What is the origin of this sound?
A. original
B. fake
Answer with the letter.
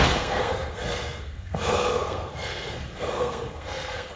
B